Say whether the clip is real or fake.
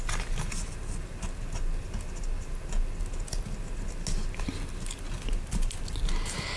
real